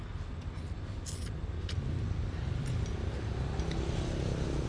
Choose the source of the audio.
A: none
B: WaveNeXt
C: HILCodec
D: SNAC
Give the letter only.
A